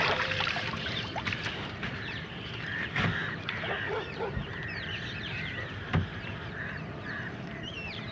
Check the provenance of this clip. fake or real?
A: fake